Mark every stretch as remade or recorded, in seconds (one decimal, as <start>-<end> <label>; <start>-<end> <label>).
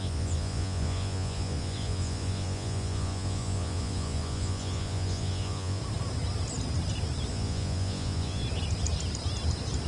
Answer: 0.0-5.8 remade; 5.8-7.3 recorded; 7.3-8.4 remade; 8.4-9.9 recorded